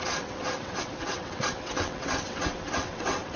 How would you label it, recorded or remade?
remade